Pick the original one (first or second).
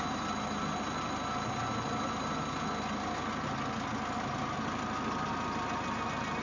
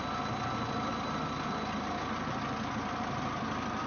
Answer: first